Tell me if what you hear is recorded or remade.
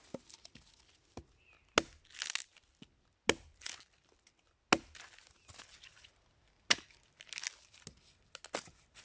recorded